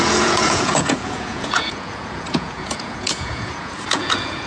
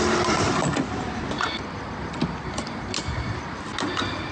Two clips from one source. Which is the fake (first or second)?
first